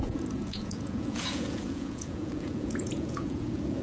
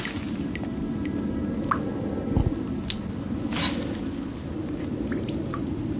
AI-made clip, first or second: first